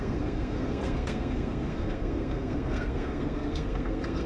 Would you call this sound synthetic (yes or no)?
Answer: yes